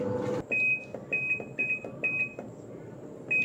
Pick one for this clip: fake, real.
real